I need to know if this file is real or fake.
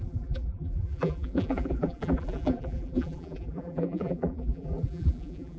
fake